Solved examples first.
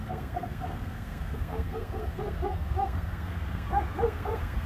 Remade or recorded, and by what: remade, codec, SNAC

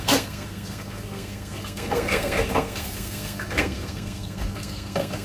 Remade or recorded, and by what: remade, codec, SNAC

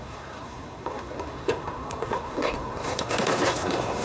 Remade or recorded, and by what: remade, codec, SNAC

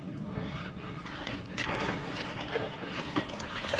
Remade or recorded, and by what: remade, codec, SNAC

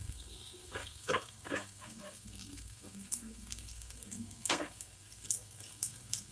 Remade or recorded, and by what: remade, codec, SNAC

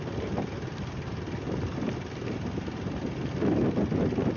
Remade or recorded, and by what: recorded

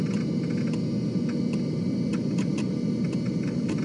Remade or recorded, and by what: recorded